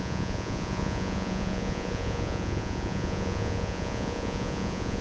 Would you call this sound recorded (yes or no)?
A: no